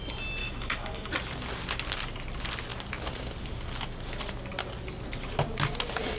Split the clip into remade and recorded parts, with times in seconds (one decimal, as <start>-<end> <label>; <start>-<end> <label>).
0.0-0.4 recorded; 0.4-1.1 remade; 1.1-6.2 recorded